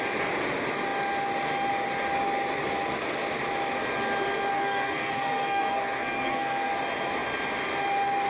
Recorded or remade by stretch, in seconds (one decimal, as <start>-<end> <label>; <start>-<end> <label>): 0.0-4.5 recorded; 4.5-6.7 remade; 6.7-8.3 recorded